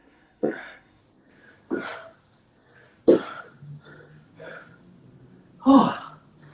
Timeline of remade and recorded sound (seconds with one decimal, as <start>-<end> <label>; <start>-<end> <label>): 0.0-1.0 remade; 1.0-6.5 recorded